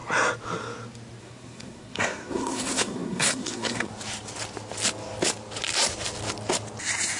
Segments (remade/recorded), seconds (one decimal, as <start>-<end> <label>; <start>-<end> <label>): 0.0-1.2 recorded; 1.2-3.9 remade; 3.9-7.2 recorded